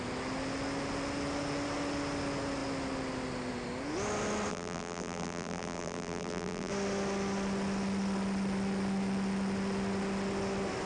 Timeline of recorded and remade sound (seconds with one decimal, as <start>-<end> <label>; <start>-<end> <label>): 0.0-4.5 recorded; 4.5-6.7 remade; 6.7-10.9 recorded